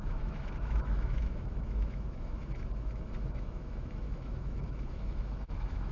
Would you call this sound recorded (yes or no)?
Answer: no